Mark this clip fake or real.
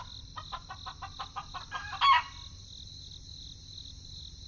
real